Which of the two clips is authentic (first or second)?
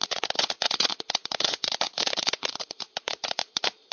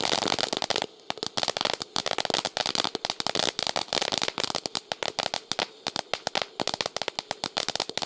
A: second